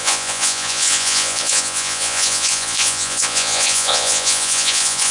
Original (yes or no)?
no